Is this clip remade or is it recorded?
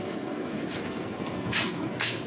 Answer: remade